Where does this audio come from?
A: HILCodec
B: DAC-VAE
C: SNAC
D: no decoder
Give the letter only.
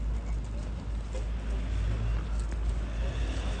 D